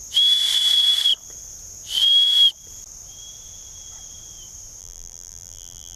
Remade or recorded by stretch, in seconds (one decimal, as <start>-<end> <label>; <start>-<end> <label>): 0.0-4.8 recorded; 4.8-6.0 remade